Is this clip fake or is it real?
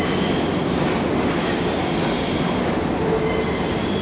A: real